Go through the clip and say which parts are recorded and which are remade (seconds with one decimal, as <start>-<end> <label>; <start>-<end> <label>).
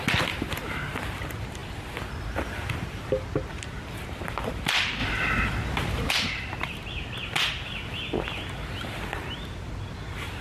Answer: 0.0-10.4 recorded